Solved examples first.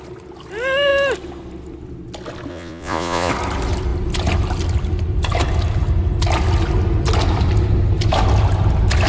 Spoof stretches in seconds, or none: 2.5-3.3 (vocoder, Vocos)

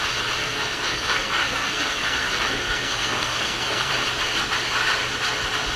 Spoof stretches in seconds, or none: 0.4-3.9 (codec, SNAC)

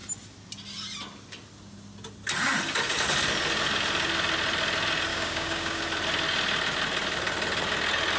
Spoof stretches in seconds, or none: 5.1-5.8 (codec, DAC)

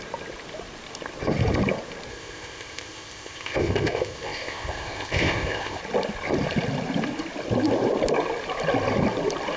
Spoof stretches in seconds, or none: 2.1-5.8 (codec, ZipCodec)

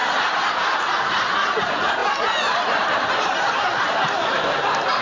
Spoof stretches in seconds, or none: none

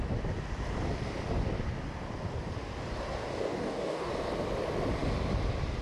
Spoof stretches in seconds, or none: 3.3-4.1 (codec, DAC)

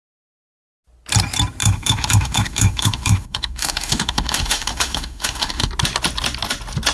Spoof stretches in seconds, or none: 1.6-5.7 (autoencoder, DAC-VAE)

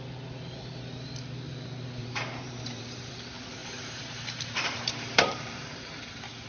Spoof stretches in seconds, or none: 2.0-3.1 (vocoder, BigVGAN v2); 3.6-6.0